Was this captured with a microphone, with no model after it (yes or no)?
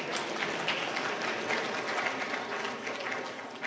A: yes